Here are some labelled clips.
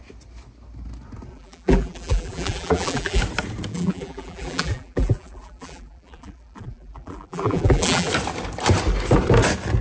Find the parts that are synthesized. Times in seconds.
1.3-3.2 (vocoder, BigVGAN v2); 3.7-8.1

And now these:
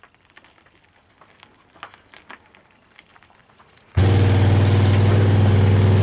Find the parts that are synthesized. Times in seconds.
3.4-4.0 (vocoder, Vocos)

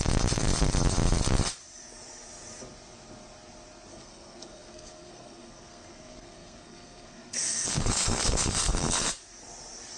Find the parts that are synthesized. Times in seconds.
3.9-9.1 (codec, SNAC)

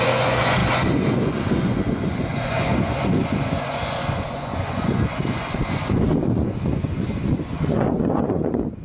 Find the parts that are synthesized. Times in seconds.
0.0-8.8 (vocoder, Vocos)

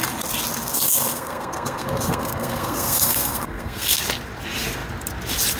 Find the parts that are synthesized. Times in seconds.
0.6-4.0 (codec, SNAC)

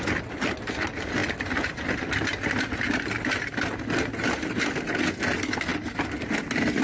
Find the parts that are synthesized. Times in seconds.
none

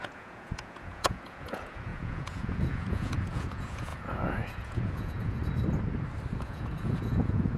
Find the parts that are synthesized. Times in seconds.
0.0-5.4 (vocoder, Vocos); 6.3-7.6

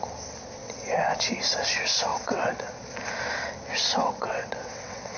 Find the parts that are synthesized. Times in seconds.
0.6-1.2 (vocoder, WaveNeXt); 2.1-2.7; 4.0-5.2